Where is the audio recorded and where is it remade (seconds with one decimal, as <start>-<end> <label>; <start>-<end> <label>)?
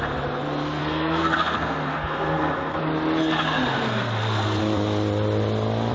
0.0-0.8 recorded; 0.8-2.8 remade; 2.8-3.7 recorded; 3.7-4.6 remade; 4.6-5.9 recorded